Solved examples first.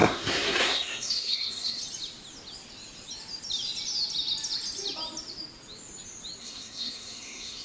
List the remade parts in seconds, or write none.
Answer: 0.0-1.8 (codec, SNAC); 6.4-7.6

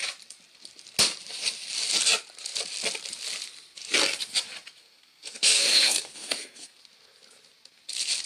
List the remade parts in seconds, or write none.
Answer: 4.8-6.8 (codec, SNAC)

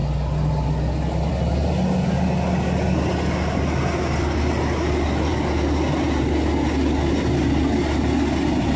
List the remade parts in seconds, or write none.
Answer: none

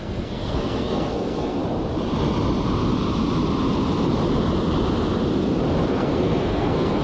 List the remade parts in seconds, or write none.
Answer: 0.0-1.6 (codec, SNAC); 5.8-7.0

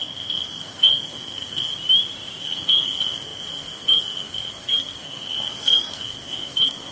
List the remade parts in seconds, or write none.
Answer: 0.0-1.7 (codec, SNAC); 2.4-6.9